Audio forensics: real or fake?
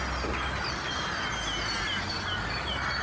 real